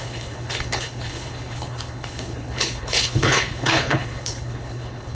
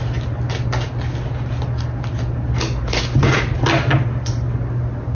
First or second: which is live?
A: second